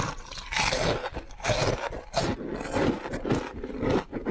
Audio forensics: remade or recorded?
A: recorded